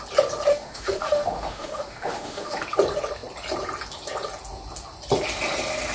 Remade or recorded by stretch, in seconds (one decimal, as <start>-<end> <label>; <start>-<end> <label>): 0.0-0.5 recorded; 0.5-2.6 remade; 2.6-5.9 recorded